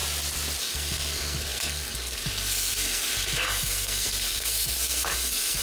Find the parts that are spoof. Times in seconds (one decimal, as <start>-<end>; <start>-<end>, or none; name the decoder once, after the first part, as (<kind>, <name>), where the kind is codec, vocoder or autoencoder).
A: 0.6-5.6 (codec, SNAC)